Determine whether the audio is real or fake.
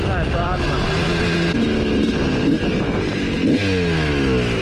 real